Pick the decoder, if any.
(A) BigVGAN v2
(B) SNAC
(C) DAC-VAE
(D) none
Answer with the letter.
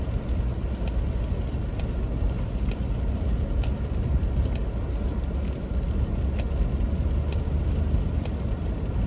D